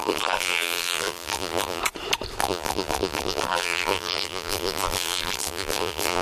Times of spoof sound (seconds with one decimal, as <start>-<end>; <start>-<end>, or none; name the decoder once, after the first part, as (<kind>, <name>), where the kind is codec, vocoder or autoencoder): 0.0-1.8 (vocoder, BigVGAN v2); 2.4-6.2